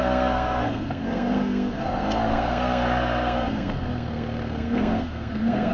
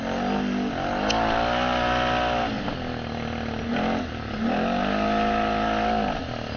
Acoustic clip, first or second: second